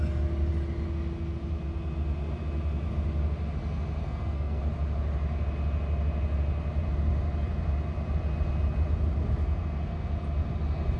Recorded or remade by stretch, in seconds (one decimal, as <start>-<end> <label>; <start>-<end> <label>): 0.0-4.0 recorded; 4.0-4.6 remade; 4.6-11.0 recorded